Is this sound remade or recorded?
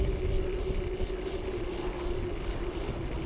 recorded